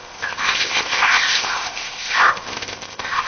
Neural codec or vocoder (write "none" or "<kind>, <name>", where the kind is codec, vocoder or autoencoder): codec, ZipCodec